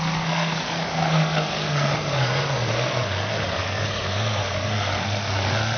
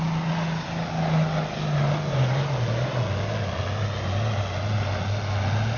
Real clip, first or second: second